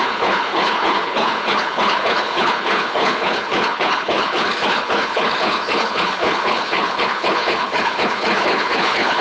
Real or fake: fake